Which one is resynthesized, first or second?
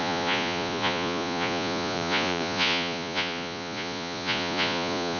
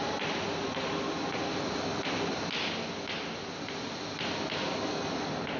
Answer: first